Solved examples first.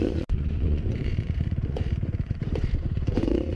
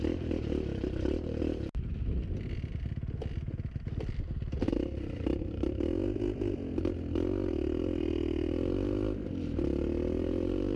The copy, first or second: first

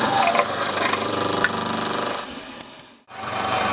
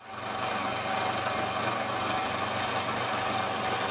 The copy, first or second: first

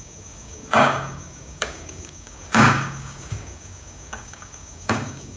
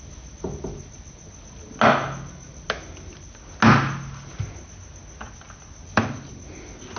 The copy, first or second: first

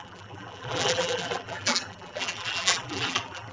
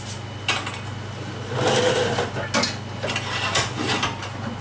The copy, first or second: first